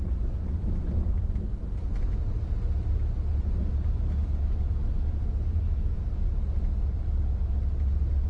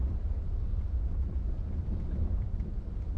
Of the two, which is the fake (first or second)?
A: second